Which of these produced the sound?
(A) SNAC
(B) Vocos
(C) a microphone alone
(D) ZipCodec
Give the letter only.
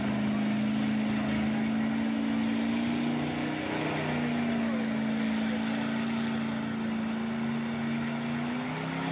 C